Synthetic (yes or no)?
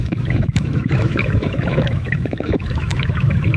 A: yes